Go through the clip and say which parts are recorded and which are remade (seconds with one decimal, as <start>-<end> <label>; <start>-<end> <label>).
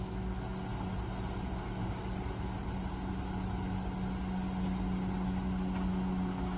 0.0-6.6 recorded